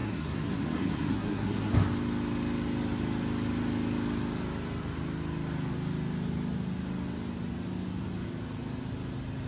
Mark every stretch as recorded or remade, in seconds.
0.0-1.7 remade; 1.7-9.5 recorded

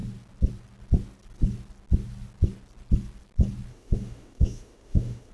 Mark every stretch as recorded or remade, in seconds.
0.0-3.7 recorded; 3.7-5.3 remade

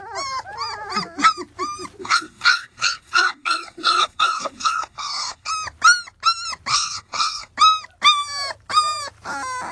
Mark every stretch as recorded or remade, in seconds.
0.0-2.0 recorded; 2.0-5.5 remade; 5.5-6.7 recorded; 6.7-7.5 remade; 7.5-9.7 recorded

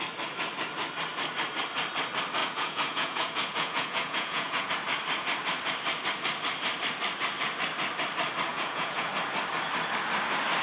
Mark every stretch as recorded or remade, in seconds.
0.0-2.4 recorded; 2.4-4.7 remade; 4.7-8.5 recorded; 8.5-9.1 remade; 9.1-10.6 recorded

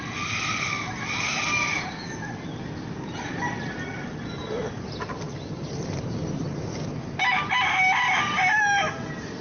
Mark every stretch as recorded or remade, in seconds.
0.0-9.4 recorded

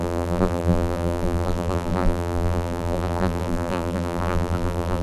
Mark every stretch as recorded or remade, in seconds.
0.0-5.0 remade

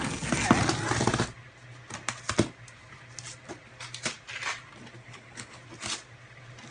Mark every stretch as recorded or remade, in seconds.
0.0-5.0 recorded; 5.0-5.6 remade; 5.6-6.7 recorded